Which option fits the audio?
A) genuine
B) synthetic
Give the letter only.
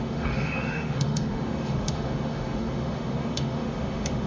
B